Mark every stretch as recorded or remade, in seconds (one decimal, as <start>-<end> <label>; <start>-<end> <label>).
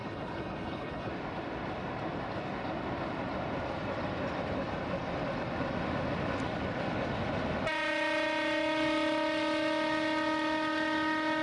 0.0-1.1 remade; 1.1-11.4 recorded